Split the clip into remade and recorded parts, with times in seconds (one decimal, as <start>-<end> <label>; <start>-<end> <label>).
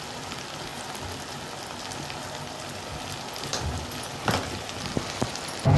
0.0-5.8 recorded